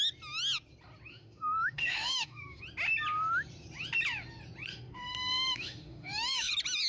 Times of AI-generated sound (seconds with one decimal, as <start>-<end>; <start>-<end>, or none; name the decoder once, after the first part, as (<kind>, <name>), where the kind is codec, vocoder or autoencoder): 1.1-2.6 (autoencoder, DAC-VAE); 4.7-6.5